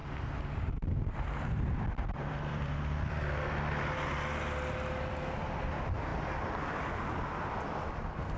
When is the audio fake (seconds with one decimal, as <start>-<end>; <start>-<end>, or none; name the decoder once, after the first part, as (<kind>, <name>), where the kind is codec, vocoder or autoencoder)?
0.0-3.8 (vocoder, BigVGAN v2); 6.1-6.9